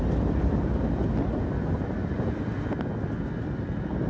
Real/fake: real